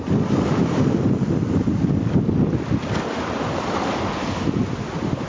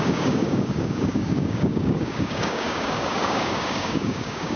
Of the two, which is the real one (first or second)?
first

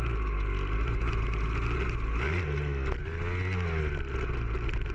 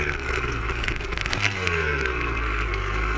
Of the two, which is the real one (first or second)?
first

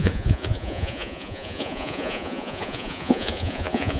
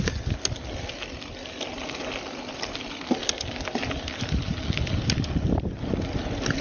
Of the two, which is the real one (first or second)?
second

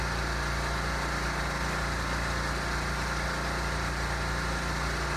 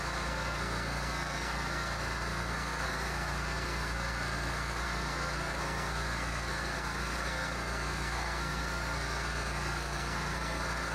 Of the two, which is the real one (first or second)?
first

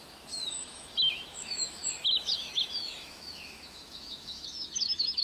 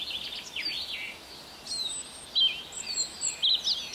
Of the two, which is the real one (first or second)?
second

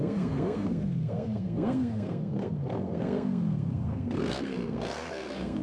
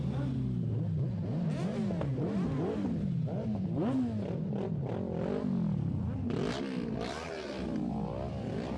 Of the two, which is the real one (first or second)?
second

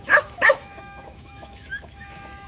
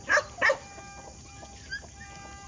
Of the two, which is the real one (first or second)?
second